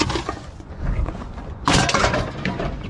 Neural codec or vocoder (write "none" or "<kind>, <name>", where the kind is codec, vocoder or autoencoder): vocoder, Vocos